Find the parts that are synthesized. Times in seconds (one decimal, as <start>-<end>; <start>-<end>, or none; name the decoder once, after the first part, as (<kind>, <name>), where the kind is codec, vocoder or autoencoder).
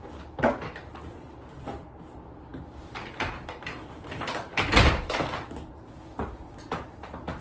none